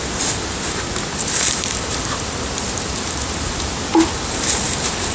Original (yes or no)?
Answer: yes